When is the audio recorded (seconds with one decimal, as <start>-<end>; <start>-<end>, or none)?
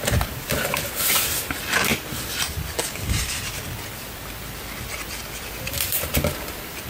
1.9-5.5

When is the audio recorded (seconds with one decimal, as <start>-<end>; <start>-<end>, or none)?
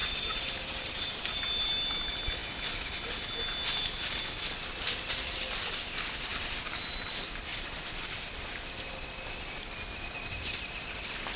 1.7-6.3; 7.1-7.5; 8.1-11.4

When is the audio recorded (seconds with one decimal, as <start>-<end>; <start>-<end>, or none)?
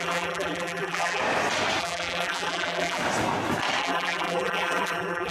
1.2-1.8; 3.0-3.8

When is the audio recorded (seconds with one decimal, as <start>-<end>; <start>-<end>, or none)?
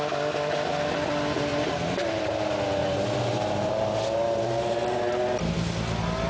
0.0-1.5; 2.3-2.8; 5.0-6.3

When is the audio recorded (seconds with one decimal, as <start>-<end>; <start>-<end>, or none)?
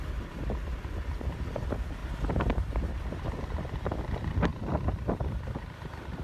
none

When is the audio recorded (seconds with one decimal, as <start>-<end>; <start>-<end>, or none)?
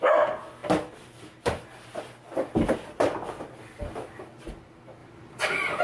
none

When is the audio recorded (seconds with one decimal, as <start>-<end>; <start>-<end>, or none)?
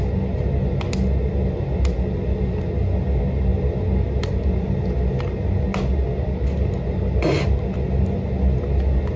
0.0-9.2